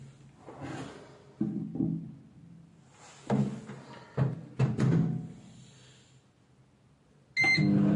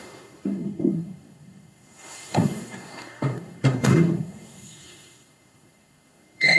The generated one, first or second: second